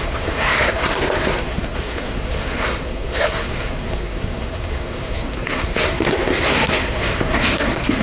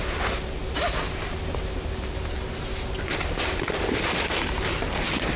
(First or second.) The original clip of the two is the second